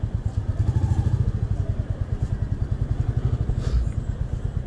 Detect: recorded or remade recorded